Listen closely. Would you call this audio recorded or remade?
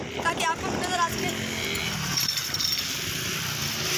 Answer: recorded